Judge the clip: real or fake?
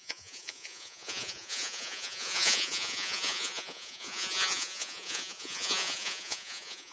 fake